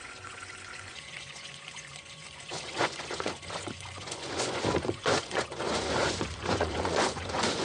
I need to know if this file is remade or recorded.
remade